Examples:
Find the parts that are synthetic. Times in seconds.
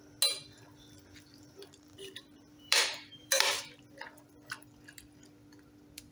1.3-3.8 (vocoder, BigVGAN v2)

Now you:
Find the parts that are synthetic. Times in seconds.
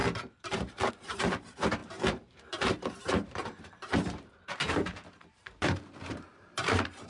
0.0-7.1 (vocoder, BigVGAN v2)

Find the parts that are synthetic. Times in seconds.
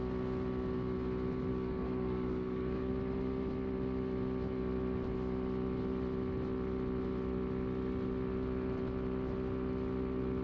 1.5-2.9 (codec, DAC)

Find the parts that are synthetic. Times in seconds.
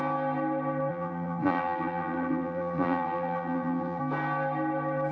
0.9-4.0 (vocoder, BigVGAN v2)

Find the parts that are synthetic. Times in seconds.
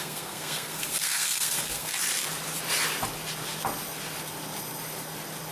0.0-1.9 (codec, SNAC)